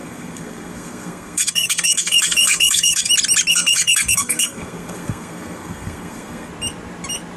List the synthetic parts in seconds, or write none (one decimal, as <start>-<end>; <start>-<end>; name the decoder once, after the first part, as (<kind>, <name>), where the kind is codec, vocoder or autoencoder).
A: 0.0-3.1 (codec, SNAC); 3.5-6.5